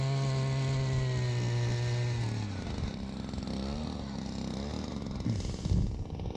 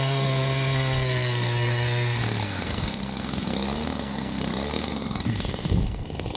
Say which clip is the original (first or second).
first